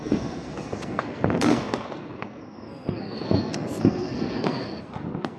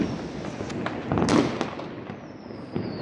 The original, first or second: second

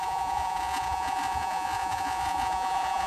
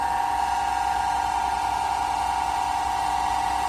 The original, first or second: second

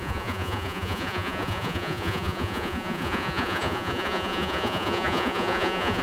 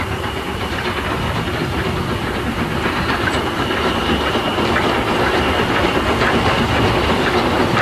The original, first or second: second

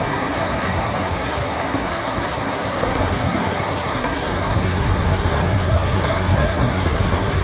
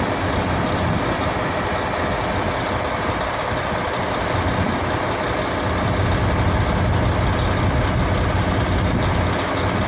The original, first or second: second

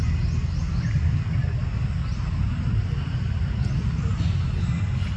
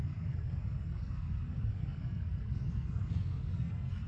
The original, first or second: first